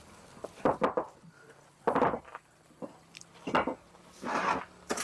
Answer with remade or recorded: recorded